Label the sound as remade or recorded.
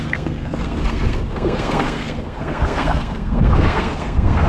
remade